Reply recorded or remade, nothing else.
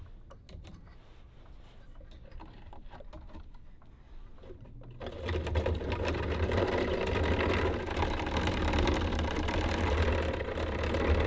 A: recorded